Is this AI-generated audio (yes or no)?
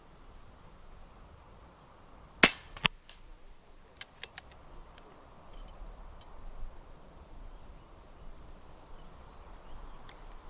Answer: no